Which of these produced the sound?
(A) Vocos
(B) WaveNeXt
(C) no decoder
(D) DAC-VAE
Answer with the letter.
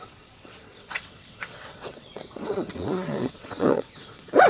B